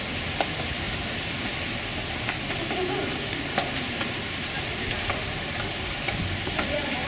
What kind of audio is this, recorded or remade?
recorded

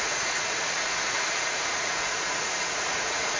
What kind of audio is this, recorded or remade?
remade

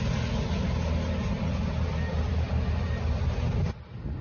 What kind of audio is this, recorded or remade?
recorded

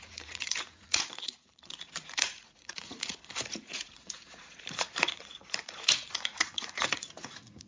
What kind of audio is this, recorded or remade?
remade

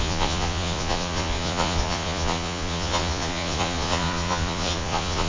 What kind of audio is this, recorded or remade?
remade